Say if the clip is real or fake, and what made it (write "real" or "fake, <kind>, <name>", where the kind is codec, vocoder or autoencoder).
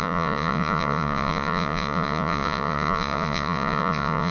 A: fake, vocoder, Vocos